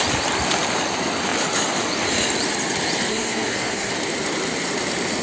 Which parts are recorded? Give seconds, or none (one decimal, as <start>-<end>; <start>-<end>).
0.0-3.1; 3.9-5.2